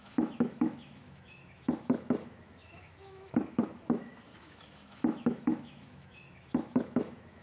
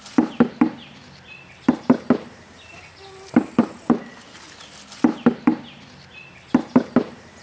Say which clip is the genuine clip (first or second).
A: second